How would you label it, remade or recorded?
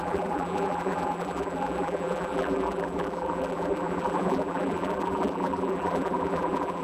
remade